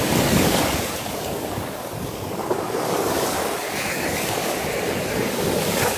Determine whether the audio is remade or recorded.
remade